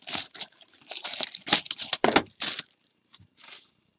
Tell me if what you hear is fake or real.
fake